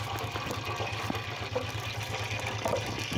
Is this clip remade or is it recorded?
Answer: recorded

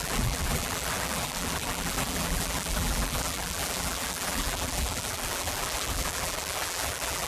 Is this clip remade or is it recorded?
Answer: remade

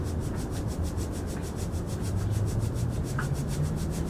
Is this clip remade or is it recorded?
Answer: recorded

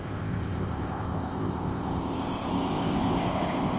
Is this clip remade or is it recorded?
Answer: remade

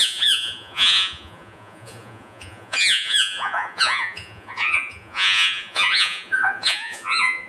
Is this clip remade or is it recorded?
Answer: remade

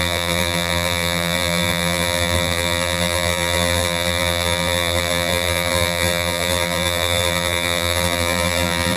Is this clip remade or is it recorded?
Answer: remade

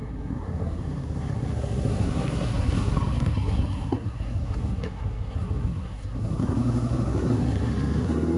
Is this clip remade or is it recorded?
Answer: remade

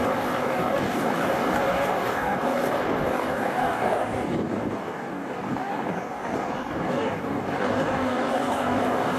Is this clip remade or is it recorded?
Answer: remade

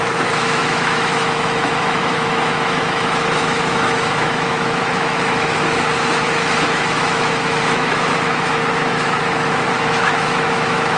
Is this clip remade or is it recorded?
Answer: remade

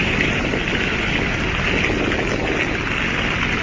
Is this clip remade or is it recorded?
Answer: recorded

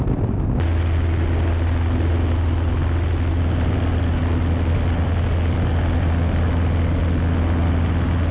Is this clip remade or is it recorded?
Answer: recorded